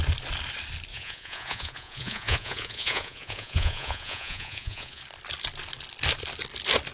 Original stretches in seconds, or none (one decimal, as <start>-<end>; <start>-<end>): 0.0-0.9; 5.0-6.9